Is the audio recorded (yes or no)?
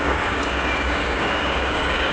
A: no